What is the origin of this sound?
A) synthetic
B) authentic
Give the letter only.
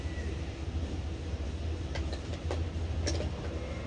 B